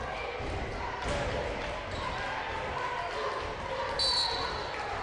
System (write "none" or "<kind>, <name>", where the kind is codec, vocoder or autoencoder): none